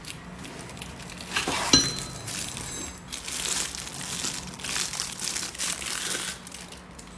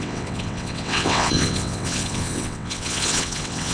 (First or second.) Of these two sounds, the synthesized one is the second